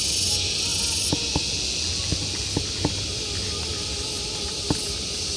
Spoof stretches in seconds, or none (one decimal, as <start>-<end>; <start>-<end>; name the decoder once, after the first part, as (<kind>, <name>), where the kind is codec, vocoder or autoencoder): none